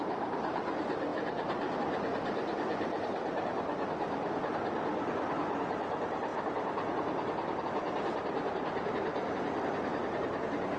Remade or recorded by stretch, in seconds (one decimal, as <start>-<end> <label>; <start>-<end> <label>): 0.0-10.8 recorded